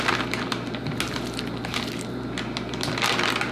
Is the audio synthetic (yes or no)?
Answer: no